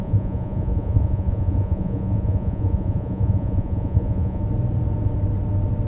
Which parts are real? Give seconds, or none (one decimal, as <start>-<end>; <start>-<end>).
4.4-5.9